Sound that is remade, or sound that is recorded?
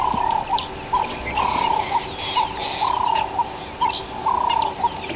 recorded